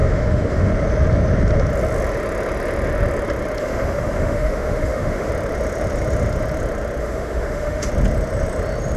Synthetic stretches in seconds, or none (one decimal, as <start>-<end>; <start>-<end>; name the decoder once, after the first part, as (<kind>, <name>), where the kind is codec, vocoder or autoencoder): 0.0-0.7 (autoencoder, DAC-VAE); 3.6-5.3; 7.0-7.9